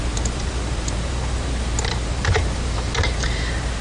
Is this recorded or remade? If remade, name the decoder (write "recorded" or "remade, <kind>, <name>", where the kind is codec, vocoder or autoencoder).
remade, vocoder, BigVGAN v2